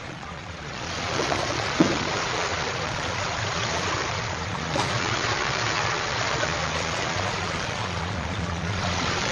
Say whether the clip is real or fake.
fake